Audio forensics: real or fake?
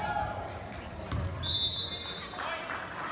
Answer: real